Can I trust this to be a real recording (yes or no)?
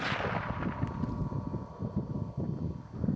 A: yes